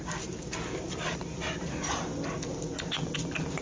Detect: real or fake real